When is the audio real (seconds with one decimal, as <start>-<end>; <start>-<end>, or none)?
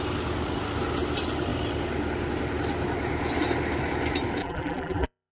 0.0-4.4